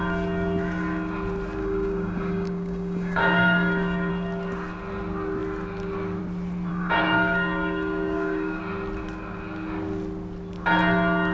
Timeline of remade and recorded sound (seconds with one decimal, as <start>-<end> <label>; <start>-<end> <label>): 0.0-1.6 recorded; 1.6-4.1 remade; 4.1-6.7 recorded; 6.7-8.6 remade; 8.6-11.3 recorded